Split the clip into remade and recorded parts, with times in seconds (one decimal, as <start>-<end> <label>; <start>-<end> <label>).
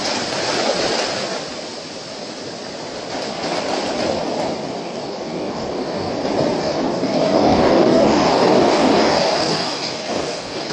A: 0.0-4.8 recorded; 4.8-6.1 remade; 6.1-6.6 recorded; 6.6-10.7 remade